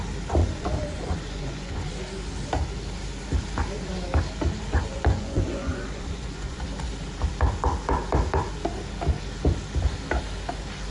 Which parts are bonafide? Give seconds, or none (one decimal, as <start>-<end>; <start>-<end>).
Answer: 0.0-0.4; 1.9-4.9; 6.6-10.9